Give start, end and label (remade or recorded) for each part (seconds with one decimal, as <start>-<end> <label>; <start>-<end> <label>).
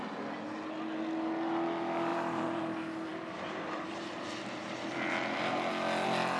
0.0-2.1 recorded; 2.1-2.6 remade; 2.6-3.1 recorded; 3.1-5.7 remade; 5.7-6.4 recorded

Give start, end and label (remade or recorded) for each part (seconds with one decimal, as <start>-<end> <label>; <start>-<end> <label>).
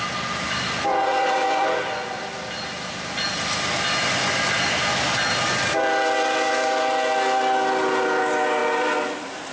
0.0-0.9 recorded; 0.9-2.2 remade; 2.2-9.5 recorded